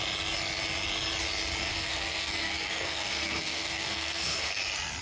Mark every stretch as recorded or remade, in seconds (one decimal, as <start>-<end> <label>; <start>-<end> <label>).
0.0-1.7 recorded; 1.7-4.6 remade; 4.6-5.0 recorded